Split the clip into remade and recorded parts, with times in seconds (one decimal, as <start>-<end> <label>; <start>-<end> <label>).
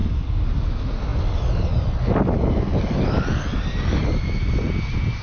0.0-5.2 recorded